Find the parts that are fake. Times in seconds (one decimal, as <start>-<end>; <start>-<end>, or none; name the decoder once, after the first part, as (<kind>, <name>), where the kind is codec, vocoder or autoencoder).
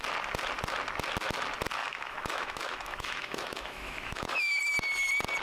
1.8-4.6 (autoencoder, DAC-VAE)